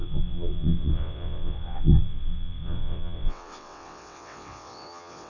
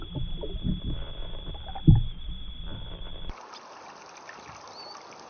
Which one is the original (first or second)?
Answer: second